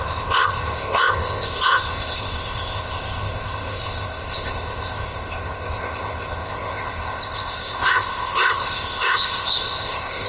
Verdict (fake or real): fake